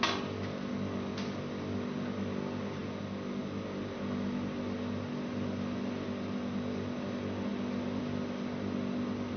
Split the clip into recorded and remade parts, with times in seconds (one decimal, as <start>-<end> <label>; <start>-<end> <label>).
0.0-9.4 recorded